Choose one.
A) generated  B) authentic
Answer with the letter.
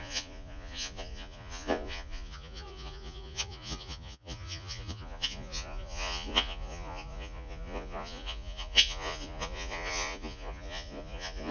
A